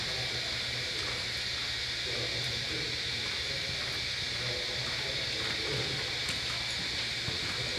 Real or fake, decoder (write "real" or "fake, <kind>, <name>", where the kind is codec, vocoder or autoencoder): real